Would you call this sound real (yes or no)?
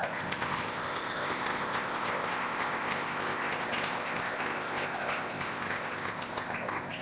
no